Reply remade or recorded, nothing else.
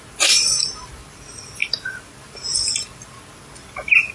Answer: recorded